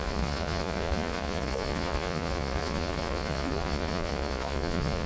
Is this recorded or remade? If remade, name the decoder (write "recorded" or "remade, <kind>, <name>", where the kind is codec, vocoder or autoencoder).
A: remade, vocoder, Vocos